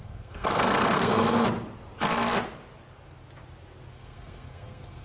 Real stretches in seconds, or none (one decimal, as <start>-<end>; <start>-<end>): 1.2-3.9